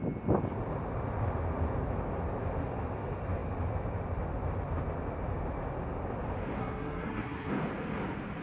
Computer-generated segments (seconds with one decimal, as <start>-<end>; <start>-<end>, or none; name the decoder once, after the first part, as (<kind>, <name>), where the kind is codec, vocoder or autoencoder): 6.6-7.5 (codec, SNAC)